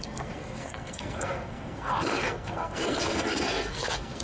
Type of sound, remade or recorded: remade